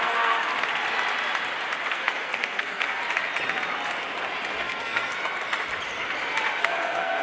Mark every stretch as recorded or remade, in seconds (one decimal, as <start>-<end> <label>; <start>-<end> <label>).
0.0-0.5 remade; 0.5-1.9 recorded; 1.9-3.0 remade; 3.0-4.6 recorded; 4.6-5.1 remade; 5.1-6.6 recorded; 6.6-7.2 remade